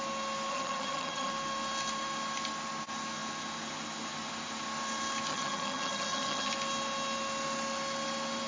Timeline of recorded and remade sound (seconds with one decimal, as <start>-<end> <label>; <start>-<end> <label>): 0.0-0.5 recorded; 0.5-1.3 remade; 1.3-5.3 recorded; 5.3-6.5 remade; 6.5-8.5 recorded